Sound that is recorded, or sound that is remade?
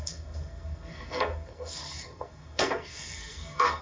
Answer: remade